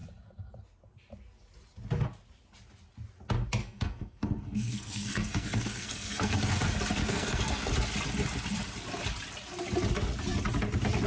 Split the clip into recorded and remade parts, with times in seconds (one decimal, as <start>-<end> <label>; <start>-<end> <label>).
0.0-3.6 recorded; 3.6-6.5 remade; 6.5-7.0 recorded; 7.0-7.7 remade; 7.7-11.1 recorded